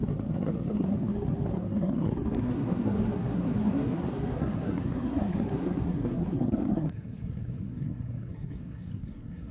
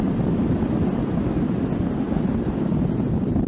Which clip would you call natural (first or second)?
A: second